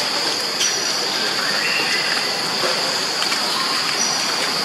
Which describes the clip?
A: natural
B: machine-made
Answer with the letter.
A